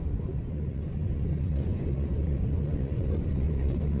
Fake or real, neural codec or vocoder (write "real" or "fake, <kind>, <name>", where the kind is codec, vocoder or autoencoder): fake, vocoder, Vocos